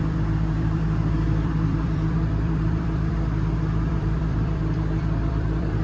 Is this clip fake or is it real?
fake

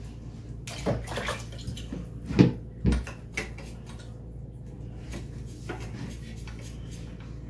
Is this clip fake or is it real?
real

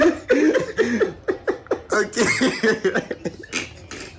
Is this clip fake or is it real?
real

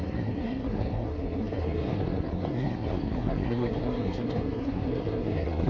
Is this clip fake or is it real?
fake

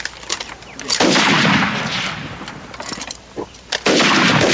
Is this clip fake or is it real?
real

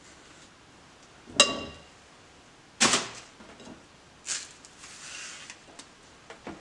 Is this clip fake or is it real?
real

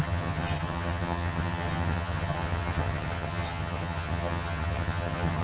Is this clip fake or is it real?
fake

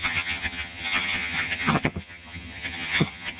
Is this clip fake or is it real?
fake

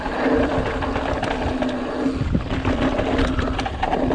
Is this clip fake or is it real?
real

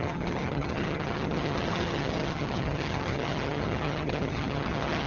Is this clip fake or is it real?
fake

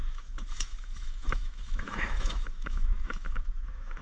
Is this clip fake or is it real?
fake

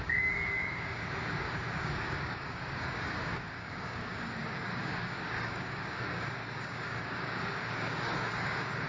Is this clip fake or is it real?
fake